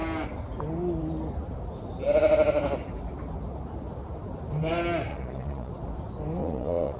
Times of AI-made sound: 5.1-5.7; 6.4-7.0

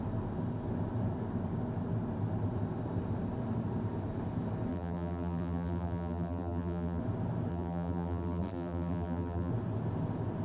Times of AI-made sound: 4.7-7.0; 7.5-9.5

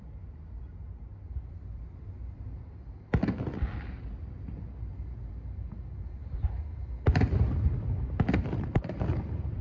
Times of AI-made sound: none

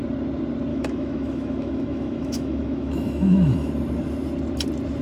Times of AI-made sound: 0.7-3.7